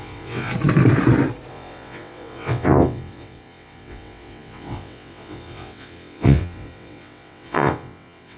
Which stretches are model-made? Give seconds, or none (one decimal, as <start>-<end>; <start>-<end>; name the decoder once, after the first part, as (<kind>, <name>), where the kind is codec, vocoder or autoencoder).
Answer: 0.0-0.5 (vocoder, WaveNeXt); 1.5-8.4